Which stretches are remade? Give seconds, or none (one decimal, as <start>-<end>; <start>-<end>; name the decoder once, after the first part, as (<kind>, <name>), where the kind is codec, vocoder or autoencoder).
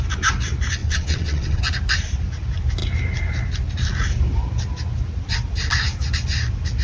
0.8-1.6 (vocoder, WaveNeXt)